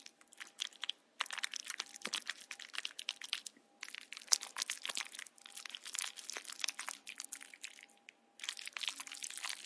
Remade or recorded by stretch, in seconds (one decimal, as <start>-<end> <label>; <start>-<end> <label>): 0.0-9.7 recorded